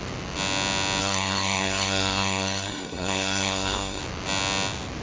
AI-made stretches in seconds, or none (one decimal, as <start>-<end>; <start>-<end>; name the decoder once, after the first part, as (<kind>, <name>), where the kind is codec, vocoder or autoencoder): 1.0-4.0 (codec, SNAC)